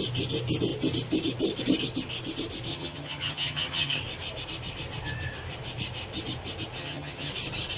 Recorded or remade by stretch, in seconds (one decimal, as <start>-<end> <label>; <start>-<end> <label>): 0.0-2.7 recorded; 2.7-4.0 remade; 4.0-6.8 recorded; 6.8-7.3 remade; 7.3-7.8 recorded